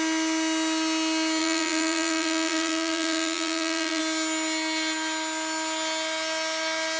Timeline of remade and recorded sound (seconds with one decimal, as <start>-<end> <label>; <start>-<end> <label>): 0.0-1.4 recorded; 1.4-4.0 remade; 4.0-7.0 recorded